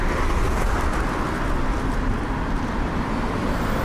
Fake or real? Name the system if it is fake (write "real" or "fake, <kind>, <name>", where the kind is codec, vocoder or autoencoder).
real